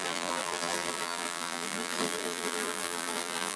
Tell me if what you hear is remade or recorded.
remade